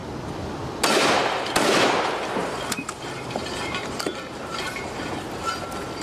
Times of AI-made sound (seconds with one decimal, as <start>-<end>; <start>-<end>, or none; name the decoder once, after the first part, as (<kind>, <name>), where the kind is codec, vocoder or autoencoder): 2.4-5.6 (vocoder, BigVGAN v2)